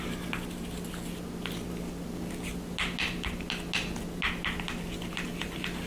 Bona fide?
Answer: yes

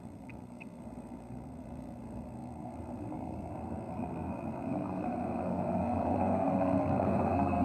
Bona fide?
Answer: no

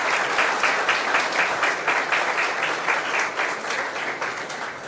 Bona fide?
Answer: yes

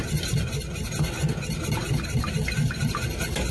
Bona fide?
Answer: yes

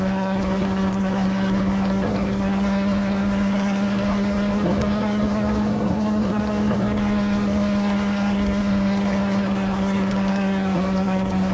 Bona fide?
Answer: no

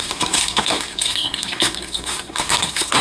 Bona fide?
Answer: no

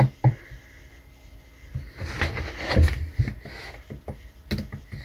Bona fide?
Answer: yes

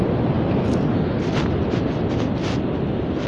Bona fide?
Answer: yes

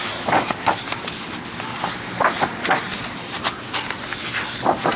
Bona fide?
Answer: yes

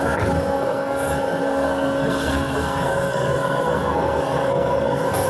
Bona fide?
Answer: no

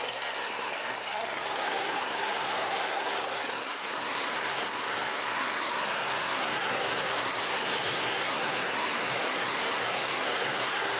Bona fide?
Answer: no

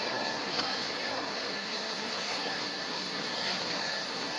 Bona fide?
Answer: no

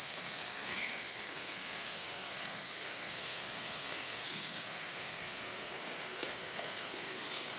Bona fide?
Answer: no